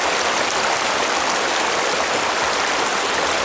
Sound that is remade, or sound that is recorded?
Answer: recorded